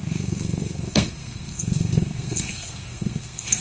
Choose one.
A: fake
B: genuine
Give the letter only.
A